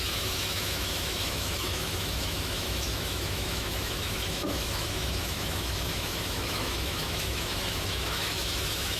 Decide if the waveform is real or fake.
fake